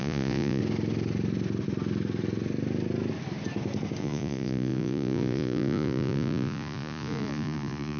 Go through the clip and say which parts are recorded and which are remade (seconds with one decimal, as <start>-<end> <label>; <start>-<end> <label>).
0.0-0.6 remade; 0.6-4.0 recorded; 4.0-8.0 remade